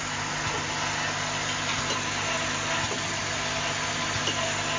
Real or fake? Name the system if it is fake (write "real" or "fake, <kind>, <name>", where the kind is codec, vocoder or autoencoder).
real